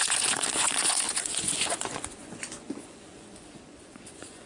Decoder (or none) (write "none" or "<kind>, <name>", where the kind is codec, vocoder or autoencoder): vocoder, Vocos